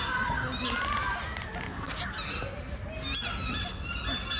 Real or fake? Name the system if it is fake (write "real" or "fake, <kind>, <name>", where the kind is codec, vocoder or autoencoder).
real